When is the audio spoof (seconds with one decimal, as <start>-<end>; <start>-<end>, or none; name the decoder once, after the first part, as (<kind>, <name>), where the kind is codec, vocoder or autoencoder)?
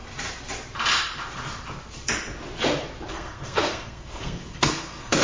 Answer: 3.1-5.2 (codec, SNAC)